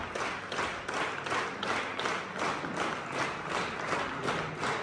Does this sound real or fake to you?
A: real